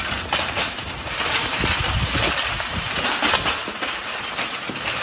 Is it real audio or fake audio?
real